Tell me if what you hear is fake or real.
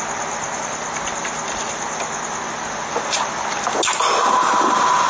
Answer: real